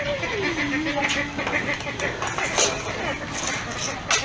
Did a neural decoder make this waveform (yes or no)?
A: no